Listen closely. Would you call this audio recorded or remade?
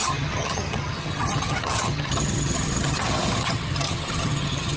remade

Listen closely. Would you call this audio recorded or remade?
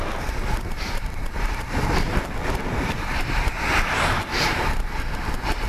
remade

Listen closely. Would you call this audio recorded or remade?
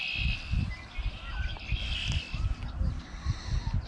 recorded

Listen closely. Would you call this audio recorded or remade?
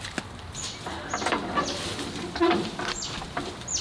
recorded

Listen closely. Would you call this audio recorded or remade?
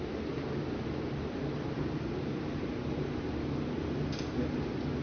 recorded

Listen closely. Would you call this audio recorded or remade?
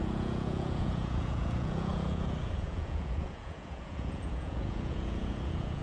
remade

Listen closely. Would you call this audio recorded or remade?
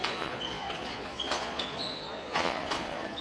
remade